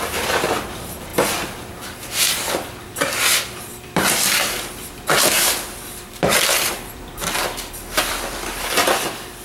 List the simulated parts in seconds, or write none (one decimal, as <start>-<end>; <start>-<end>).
3.7-8.2